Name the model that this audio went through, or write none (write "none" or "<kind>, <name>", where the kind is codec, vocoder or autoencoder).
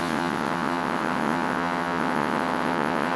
vocoder, WaveNeXt